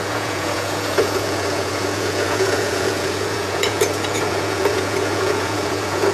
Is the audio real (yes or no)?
no